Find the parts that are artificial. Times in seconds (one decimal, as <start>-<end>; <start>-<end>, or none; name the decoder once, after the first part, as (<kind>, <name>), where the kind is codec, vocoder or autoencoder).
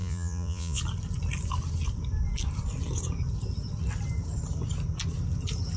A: 0.0-0.8 (vocoder, Vocos)